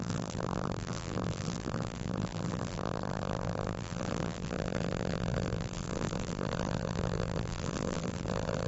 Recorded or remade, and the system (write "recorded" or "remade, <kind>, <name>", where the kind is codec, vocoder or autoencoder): remade, vocoder, BigVGAN v2